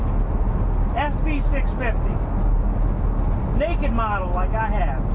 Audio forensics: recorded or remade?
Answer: recorded